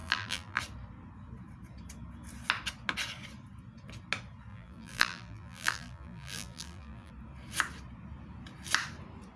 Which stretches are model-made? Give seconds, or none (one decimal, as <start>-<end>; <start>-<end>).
0.0-0.6; 4.5-7.1